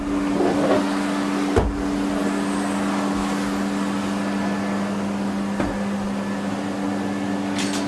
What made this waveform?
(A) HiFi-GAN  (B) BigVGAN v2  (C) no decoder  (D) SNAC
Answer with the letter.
C